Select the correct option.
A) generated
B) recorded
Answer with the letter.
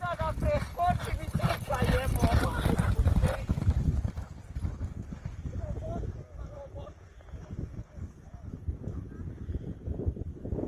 B